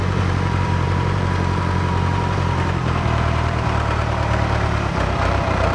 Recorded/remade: remade